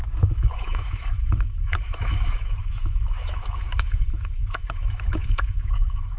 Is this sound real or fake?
fake